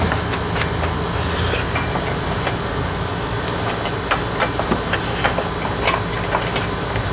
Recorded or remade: recorded